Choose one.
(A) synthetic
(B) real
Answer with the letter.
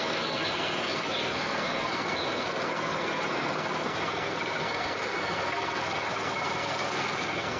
A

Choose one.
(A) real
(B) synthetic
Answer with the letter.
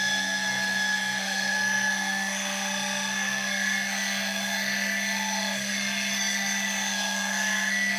B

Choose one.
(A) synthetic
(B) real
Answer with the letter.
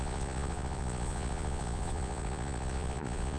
A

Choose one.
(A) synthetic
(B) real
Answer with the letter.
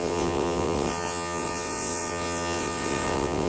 A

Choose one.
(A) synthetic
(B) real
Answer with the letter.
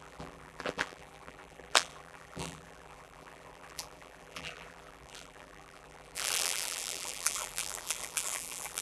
A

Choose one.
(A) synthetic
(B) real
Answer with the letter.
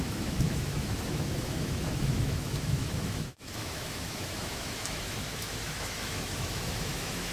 A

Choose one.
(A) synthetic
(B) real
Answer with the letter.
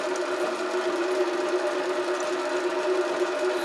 B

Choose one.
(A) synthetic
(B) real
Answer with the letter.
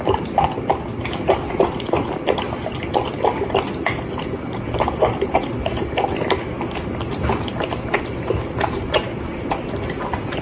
B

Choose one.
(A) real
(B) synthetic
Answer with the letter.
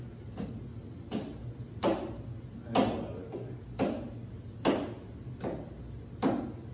A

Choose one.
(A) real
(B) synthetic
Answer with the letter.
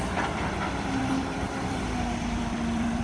B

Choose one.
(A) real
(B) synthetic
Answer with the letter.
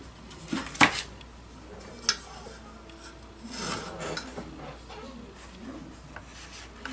A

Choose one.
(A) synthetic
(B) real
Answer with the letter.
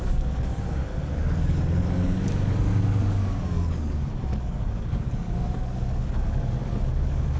A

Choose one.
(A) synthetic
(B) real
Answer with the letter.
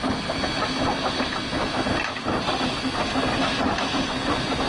B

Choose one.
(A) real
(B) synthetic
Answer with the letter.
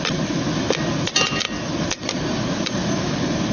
A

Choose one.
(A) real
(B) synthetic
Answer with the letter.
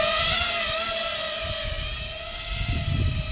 B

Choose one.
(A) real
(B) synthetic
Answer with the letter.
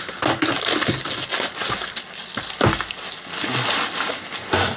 A